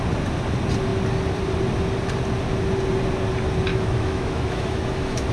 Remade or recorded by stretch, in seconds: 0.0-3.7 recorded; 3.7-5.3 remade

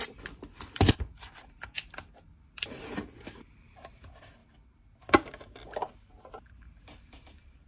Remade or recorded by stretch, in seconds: 0.0-4.4 remade; 4.4-6.5 recorded; 6.5-7.7 remade